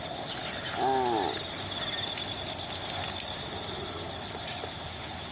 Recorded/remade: recorded